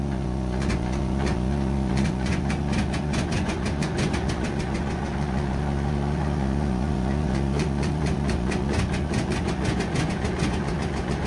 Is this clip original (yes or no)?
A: no